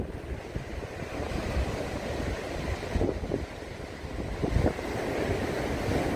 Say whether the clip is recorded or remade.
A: recorded